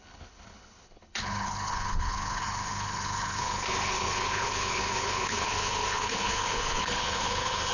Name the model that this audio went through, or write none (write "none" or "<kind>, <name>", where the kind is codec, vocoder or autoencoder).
codec, HILCodec